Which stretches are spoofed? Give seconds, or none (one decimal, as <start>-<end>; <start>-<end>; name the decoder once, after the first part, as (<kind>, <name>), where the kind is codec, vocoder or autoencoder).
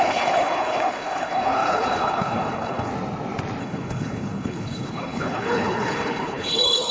0.0-2.9 (codec, HILCodec); 3.6-6.9